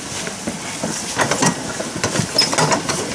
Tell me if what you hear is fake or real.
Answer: real